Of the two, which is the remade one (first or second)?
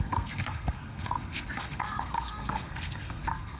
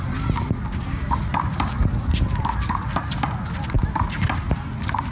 first